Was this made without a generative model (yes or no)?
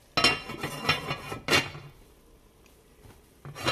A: yes